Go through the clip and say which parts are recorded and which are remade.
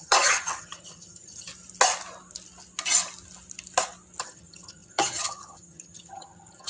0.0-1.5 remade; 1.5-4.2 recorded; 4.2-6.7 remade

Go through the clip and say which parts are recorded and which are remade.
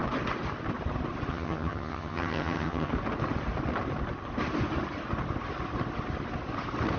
0.0-1.3 recorded; 1.3-2.9 remade; 2.9-7.0 recorded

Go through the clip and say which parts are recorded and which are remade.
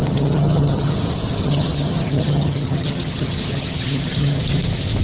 0.0-0.9 remade; 0.9-1.4 recorded; 1.4-4.4 remade; 4.4-5.0 recorded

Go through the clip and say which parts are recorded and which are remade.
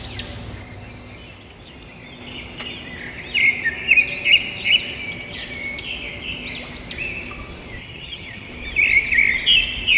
0.0-7.8 recorded; 7.8-8.5 remade; 8.5-10.0 recorded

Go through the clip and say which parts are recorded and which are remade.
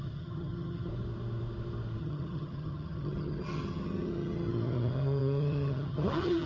0.0-0.9 remade; 0.9-2.0 recorded; 2.0-6.5 remade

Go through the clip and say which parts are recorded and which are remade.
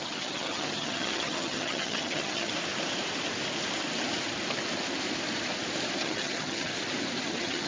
0.0-2.5 remade; 2.5-6.0 recorded; 6.0-6.7 remade; 6.7-7.2 recorded; 7.2-7.7 remade